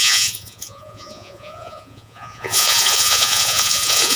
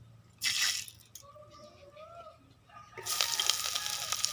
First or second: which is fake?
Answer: first